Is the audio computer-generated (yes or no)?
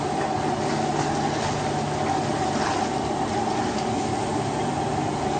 no